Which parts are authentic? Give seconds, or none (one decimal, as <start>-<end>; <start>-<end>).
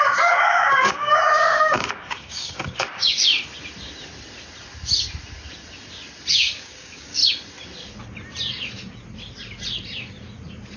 3.3-6.3; 7.2-10.8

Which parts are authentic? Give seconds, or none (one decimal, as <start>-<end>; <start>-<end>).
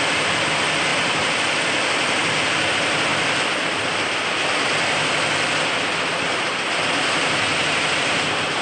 0.0-8.6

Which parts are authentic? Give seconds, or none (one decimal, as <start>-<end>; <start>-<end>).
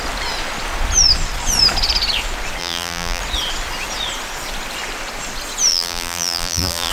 0.0-2.6; 3.2-5.7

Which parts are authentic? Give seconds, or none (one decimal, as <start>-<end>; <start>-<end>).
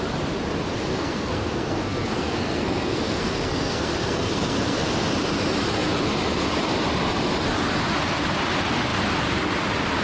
0.0-0.9; 4.9-10.0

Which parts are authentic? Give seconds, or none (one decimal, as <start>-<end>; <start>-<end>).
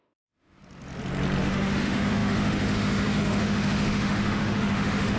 0.6-1.4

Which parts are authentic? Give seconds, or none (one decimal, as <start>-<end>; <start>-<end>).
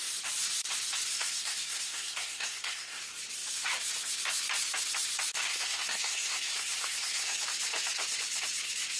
0.0-1.1; 3.0-5.5; 7.4-9.0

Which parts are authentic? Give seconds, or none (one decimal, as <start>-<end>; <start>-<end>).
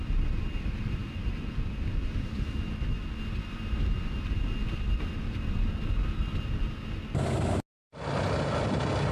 0.0-9.1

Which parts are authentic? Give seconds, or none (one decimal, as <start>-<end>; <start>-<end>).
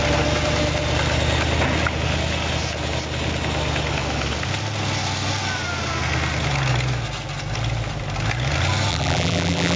0.0-8.9